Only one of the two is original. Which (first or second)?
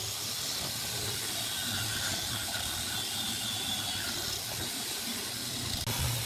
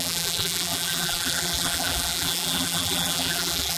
first